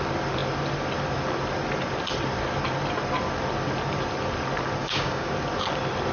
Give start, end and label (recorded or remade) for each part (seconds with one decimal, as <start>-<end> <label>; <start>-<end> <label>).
0.0-4.8 recorded; 4.8-5.3 remade; 5.3-6.1 recorded